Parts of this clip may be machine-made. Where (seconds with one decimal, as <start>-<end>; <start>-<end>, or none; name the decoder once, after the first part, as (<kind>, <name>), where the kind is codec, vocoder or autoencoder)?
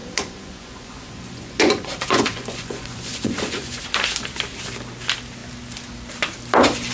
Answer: 0.0-3.8 (vocoder, Vocos)